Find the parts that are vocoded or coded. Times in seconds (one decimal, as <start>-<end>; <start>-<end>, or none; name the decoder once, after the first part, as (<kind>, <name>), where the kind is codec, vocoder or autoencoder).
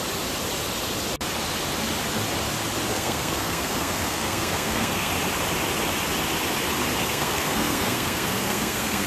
2.9-5.1 (codec, SNAC); 7.0-9.1